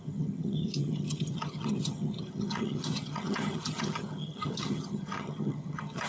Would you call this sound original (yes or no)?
no